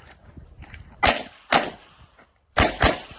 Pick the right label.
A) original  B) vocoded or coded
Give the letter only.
B